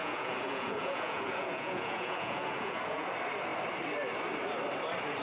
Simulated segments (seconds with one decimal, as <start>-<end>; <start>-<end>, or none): 0.0-3.1